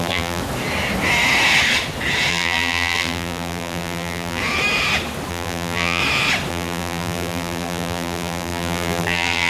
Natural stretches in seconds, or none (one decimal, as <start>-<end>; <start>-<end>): 0.4-2.3; 4.4-5.3; 6.0-6.5